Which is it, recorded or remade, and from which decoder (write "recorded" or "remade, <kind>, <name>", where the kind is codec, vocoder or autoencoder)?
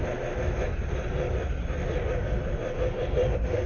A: recorded